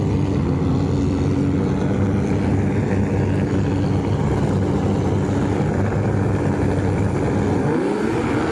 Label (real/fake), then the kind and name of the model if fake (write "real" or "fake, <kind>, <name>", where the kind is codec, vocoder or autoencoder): real